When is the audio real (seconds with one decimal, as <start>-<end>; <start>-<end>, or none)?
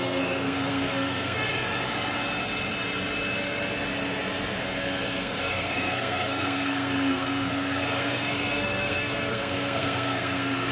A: 1.5-4.6